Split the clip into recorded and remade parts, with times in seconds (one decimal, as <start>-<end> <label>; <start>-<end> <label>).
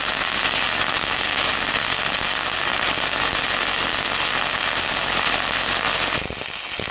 0.0-0.9 recorded; 0.9-1.5 remade; 1.5-6.9 recorded